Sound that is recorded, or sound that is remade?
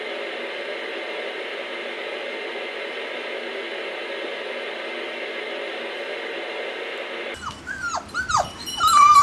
remade